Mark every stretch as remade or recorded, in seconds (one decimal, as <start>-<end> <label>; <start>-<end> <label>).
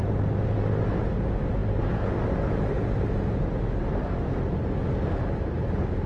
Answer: 0.0-6.1 recorded